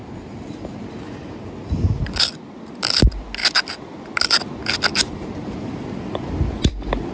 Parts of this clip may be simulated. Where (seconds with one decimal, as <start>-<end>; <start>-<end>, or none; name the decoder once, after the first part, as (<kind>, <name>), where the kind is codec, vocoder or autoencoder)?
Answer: none